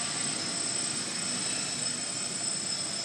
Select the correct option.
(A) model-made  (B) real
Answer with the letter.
B